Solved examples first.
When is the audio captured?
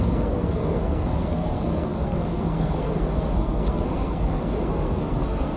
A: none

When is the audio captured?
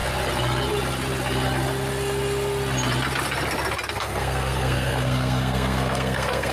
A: 0.0-3.9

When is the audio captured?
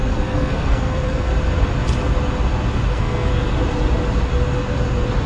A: 1.3-2.9; 3.3-5.3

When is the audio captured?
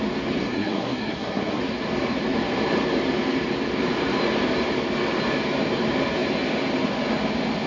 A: 0.0-0.4; 1.6-7.7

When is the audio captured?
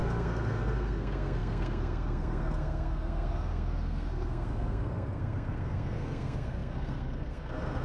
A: none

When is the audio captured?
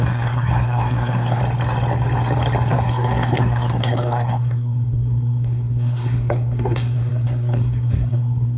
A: 1.4-2.7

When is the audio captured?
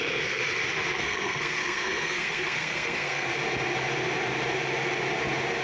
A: 0.4-1.0; 3.3-5.6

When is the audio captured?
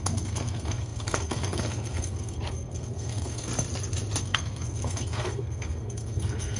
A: 3.5-4.2